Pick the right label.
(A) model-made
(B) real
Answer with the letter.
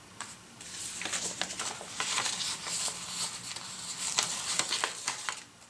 B